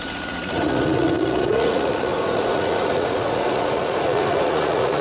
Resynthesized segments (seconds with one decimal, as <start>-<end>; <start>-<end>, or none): 0.0-5.0